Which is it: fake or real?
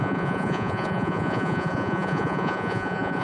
fake